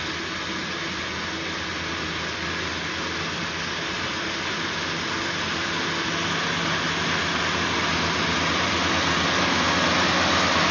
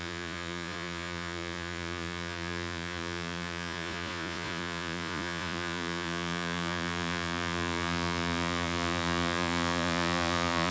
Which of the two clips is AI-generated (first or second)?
second